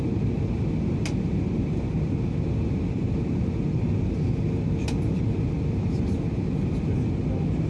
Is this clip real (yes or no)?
yes